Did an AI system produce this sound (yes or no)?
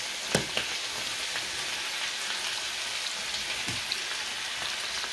no